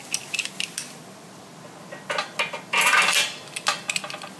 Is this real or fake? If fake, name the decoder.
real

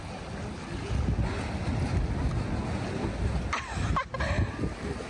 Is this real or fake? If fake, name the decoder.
real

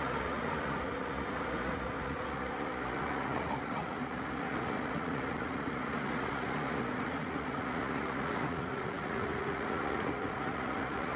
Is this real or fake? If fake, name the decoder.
fake, vocoder, Vocos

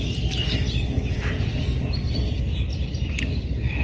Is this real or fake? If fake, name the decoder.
real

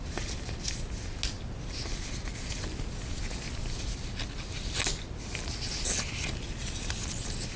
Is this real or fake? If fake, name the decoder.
real